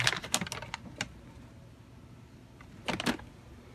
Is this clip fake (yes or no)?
no